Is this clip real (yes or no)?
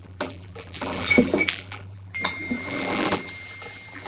no